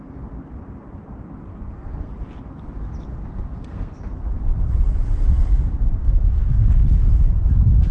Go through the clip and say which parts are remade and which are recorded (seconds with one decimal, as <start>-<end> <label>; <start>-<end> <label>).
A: 0.0-1.5 recorded; 1.5-2.1 remade; 2.1-3.1 recorded; 3.1-4.0 remade; 4.0-6.0 recorded; 6.0-6.7 remade; 6.7-7.9 recorded